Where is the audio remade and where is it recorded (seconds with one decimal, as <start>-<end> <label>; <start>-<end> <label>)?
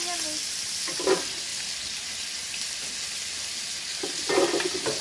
0.0-5.0 recorded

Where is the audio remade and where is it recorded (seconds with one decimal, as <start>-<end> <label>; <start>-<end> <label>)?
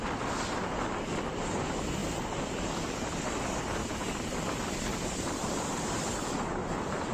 0.0-4.9 recorded; 4.9-7.1 remade